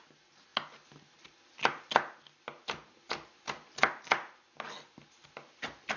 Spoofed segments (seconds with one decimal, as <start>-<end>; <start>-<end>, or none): none